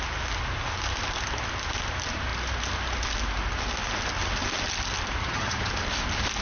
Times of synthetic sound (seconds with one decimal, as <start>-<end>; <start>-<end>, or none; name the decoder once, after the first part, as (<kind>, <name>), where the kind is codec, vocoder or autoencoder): 5.2-5.7 (vocoder, HiFi-GAN)